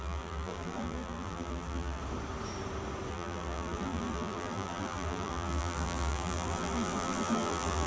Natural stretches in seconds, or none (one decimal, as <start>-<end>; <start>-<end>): 2.0-3.1